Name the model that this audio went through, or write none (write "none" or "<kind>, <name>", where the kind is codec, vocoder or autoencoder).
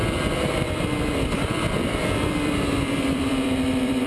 vocoder, BigVGAN v2